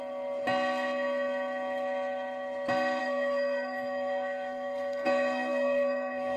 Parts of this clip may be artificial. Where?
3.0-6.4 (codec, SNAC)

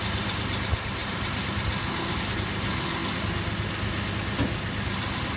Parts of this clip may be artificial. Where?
none

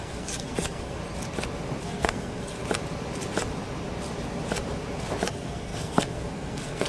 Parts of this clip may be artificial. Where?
0.0-1.0 (codec, SNAC); 1.8-2.6; 5.3-6.9

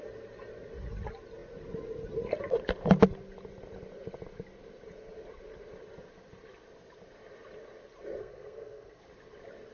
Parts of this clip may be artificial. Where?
8.2-9.0 (codec, SNAC)